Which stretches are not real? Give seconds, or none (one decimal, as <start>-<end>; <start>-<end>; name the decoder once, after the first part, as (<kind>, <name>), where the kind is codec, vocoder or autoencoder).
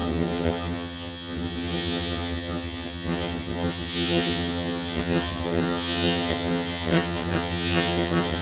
0.0-8.4 (vocoder, HiFi-GAN)